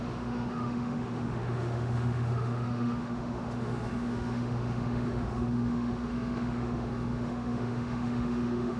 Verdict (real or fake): fake